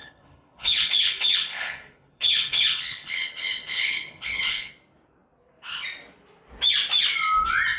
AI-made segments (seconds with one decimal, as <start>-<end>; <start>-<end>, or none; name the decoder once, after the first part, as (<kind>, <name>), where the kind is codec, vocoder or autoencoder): 0.0-4.7 (codec, HILCodec)